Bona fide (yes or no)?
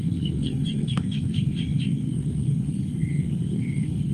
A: no